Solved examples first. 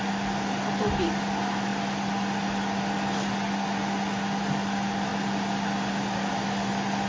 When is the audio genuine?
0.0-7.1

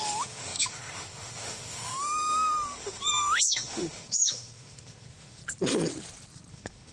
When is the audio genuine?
5.4-6.5